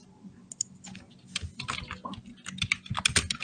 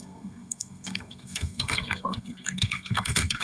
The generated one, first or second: second